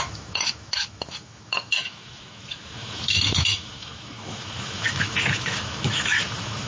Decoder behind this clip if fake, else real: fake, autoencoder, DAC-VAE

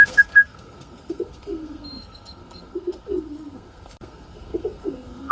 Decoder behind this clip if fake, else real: fake, codec, SNAC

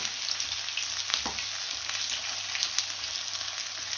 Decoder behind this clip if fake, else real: real